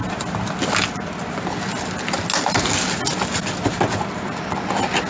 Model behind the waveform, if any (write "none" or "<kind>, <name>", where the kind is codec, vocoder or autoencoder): none